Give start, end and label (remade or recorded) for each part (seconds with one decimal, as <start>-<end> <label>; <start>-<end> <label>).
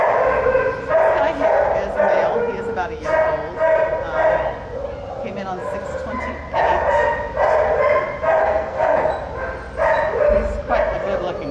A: 0.0-8.4 recorded; 8.4-9.1 remade; 9.1-11.5 recorded